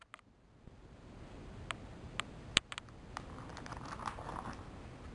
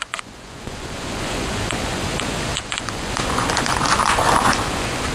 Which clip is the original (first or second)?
first